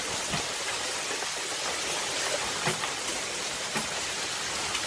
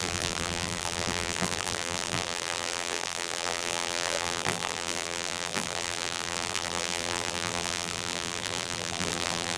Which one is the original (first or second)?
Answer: first